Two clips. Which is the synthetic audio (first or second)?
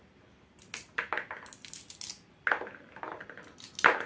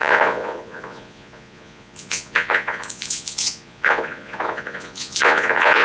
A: second